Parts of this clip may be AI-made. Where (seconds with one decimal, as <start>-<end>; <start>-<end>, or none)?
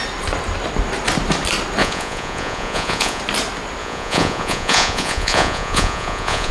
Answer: 1.8-3.2; 3.8-6.5